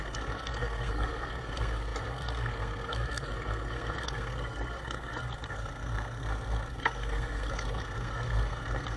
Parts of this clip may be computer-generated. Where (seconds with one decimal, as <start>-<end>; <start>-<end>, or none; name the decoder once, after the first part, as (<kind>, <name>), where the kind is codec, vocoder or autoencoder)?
0.0-9.0 (codec, SNAC)